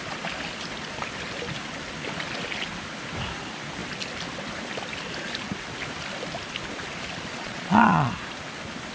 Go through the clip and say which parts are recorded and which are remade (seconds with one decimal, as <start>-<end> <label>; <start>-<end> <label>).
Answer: 0.0-7.3 recorded; 7.3-8.1 remade; 8.1-8.9 recorded